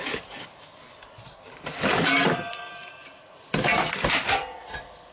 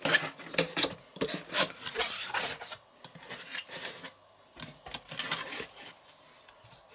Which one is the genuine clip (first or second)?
second